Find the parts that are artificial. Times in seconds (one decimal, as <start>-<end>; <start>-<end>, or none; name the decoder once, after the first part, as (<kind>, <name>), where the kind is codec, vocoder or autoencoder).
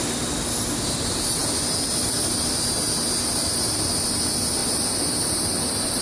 4.6-5.2 (vocoder, BigVGAN v2)